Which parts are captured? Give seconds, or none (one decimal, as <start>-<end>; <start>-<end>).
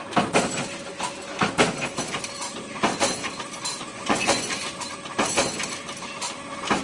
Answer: 0.0-3.9; 4.7-6.8